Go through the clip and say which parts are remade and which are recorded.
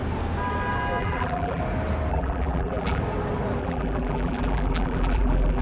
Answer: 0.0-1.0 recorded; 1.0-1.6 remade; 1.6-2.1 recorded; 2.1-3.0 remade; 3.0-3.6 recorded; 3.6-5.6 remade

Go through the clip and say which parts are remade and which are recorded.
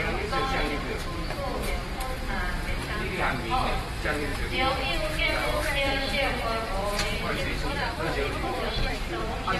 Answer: 0.0-9.6 remade